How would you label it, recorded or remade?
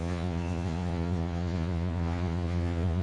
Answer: remade